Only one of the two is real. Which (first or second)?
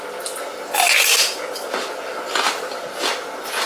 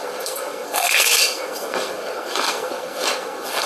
first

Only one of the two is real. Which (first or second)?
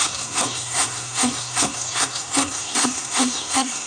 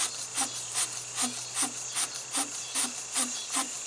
second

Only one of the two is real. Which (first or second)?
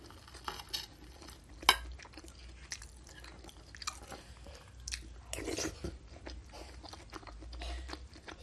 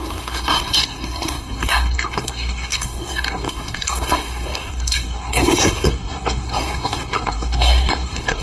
first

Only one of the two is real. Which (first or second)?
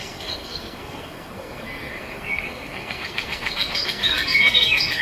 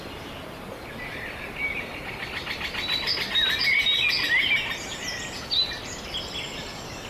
second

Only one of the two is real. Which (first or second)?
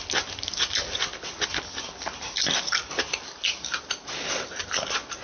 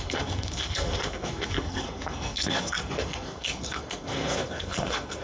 first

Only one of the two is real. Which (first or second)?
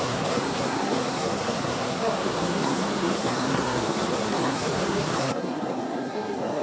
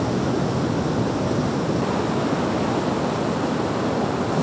second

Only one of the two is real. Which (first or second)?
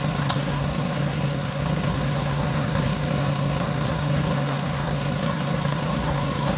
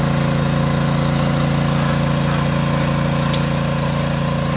second